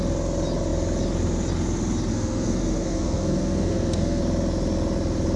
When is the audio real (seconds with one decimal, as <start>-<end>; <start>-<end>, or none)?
0.0-2.1; 4.2-5.4